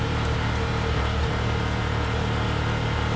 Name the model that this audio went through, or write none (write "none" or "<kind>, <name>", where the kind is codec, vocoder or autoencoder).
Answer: none